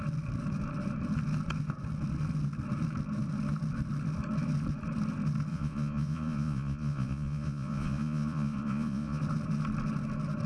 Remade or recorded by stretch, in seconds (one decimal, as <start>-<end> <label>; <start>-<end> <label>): 0.0-5.5 recorded; 5.5-9.2 remade; 9.2-10.5 recorded